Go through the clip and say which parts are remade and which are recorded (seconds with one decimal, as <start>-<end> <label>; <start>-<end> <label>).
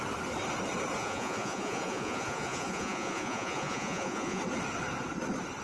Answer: 0.0-1.0 recorded; 1.0-4.4 remade; 4.4-5.6 recorded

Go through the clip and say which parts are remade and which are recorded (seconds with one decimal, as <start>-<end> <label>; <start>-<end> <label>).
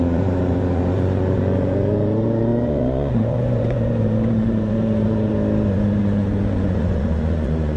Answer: 0.0-5.3 remade; 5.3-6.0 recorded; 6.0-7.8 remade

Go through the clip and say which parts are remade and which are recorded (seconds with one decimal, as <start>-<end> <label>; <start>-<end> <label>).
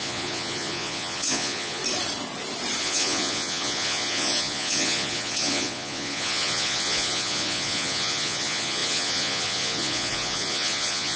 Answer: 0.0-1.8 remade; 1.8-2.8 recorded; 2.8-11.2 remade